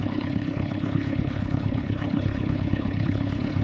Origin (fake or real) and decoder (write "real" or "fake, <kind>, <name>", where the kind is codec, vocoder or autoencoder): fake, codec, HILCodec